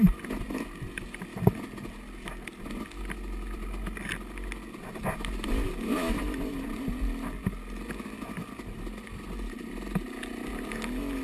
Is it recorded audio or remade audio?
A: recorded